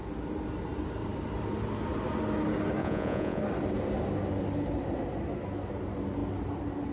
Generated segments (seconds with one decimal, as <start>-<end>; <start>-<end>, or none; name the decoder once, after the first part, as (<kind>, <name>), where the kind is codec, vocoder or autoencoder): 2.8-3.4 (vocoder, Vocos)